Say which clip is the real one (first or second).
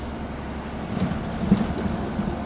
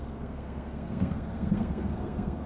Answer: first